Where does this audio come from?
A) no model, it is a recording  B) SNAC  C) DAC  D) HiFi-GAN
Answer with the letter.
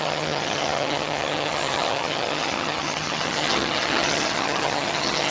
D